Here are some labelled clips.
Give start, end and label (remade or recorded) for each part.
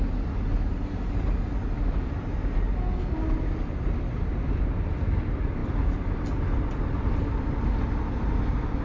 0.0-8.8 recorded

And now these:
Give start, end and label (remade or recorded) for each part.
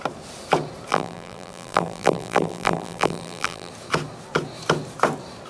0.0-0.9 recorded; 0.9-3.7 remade; 3.7-5.5 recorded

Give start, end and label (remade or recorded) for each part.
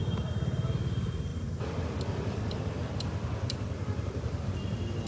0.0-0.7 remade; 0.7-5.1 recorded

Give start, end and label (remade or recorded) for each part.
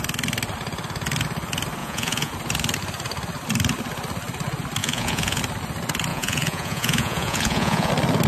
0.0-1.8 recorded; 1.8-2.3 remade; 2.3-4.8 recorded; 4.8-5.4 remade; 5.4-6.1 recorded; 6.1-7.9 remade; 7.9-8.3 recorded